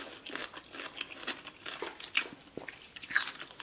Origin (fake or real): real